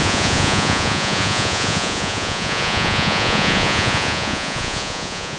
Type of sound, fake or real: fake